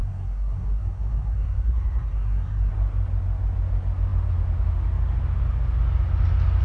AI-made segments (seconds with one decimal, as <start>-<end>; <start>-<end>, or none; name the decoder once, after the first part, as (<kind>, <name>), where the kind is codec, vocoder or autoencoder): 0.0-2.7 (codec, SNAC)